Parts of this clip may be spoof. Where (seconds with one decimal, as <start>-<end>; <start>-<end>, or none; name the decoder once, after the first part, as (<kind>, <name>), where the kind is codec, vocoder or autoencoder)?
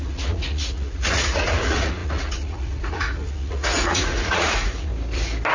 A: 0.0-4.9 (vocoder, Vocos)